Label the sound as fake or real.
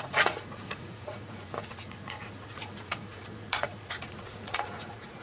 fake